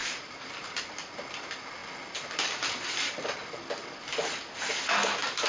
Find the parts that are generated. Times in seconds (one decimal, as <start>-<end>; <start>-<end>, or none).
0.0-0.5